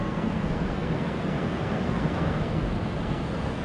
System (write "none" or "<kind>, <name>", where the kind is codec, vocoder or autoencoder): codec, SNAC